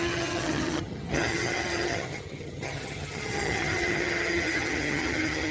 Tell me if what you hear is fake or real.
fake